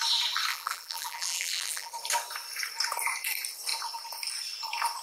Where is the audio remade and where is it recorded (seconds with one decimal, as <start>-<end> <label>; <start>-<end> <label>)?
0.0-0.5 recorded; 0.5-1.9 remade; 1.9-5.0 recorded